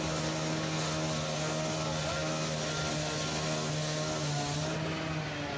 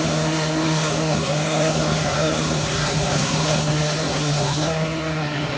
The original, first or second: first